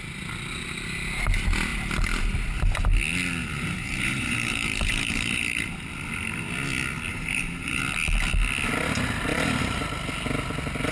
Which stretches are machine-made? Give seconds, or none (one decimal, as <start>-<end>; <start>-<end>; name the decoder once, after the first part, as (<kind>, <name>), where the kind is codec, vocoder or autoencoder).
3.4-5.6 (vocoder, BigVGAN v2); 7.1-7.8; 9.3-9.8